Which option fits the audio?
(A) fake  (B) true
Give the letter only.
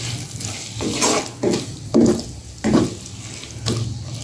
B